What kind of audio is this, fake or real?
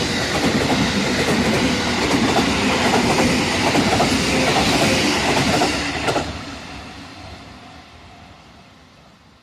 real